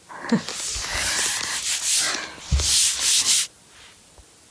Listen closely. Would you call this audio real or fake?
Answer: real